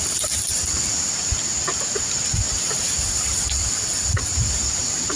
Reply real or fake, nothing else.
real